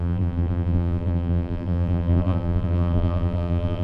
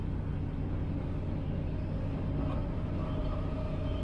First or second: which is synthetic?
first